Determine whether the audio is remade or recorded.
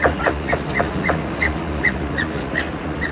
remade